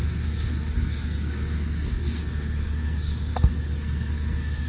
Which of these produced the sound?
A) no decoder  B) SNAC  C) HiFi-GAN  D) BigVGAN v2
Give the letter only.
B